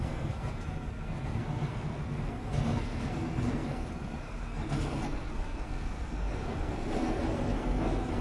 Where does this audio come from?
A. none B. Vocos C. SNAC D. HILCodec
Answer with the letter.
C